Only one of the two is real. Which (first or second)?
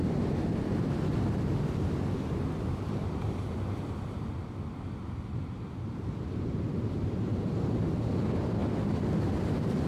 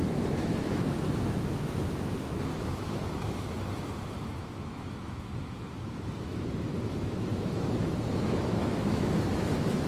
first